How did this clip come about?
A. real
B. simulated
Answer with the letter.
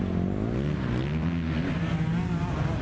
A